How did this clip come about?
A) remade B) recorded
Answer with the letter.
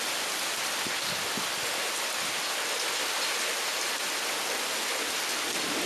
B